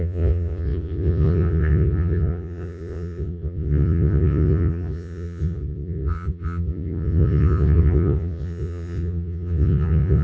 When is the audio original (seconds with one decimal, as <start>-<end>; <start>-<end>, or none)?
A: none